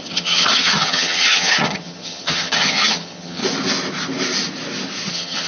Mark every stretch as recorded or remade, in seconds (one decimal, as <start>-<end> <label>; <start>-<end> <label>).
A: 0.0-3.4 remade; 3.4-5.1 recorded; 5.1-5.5 remade

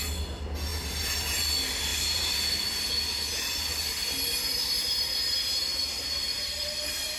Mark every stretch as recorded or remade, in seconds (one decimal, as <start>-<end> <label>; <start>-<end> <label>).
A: 0.0-0.7 recorded; 0.7-1.4 remade; 1.4-1.9 recorded; 1.9-2.9 remade; 2.9-7.2 recorded

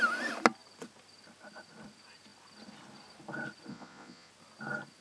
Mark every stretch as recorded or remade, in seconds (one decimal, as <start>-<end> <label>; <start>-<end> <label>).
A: 0.0-3.7 recorded; 3.7-4.3 remade; 4.3-5.0 recorded

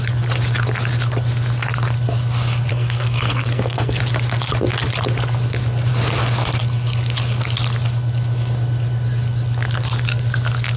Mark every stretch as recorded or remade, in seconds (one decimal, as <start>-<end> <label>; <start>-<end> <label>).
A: 0.0-2.7 recorded; 2.7-4.0 remade; 4.0-10.8 recorded